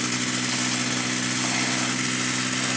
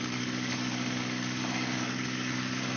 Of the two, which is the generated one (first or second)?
second